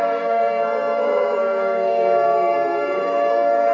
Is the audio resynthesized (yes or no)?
yes